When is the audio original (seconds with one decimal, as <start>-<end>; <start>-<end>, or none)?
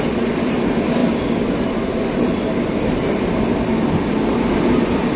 0.0-5.2